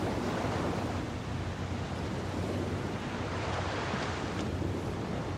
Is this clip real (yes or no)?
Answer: no